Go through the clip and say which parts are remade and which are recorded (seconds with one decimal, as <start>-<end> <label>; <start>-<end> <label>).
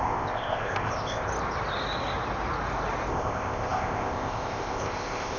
0.0-1.3 remade; 1.3-3.1 recorded; 3.1-5.4 remade